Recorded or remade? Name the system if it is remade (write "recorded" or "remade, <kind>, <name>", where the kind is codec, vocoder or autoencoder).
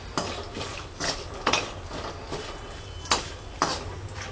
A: recorded